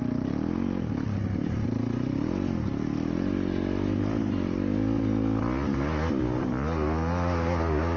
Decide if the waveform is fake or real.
real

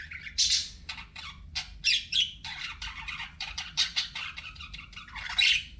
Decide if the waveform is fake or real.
real